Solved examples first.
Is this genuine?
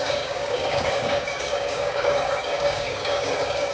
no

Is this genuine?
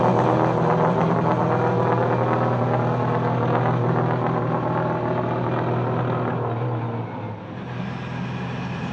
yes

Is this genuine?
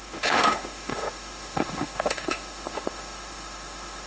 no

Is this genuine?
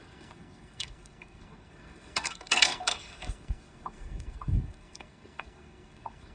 no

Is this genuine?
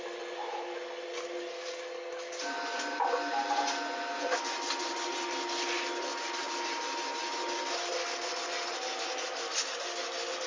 yes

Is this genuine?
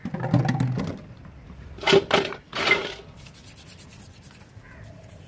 yes